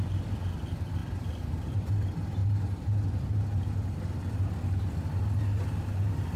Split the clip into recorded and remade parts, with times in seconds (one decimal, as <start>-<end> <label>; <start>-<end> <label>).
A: 0.0-1.0 recorded; 1.0-1.7 remade; 1.7-6.4 recorded